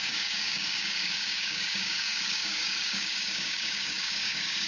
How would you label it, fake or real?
fake